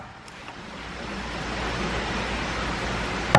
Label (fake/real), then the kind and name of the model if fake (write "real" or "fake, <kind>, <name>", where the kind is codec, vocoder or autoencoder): real